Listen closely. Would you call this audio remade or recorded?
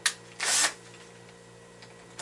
recorded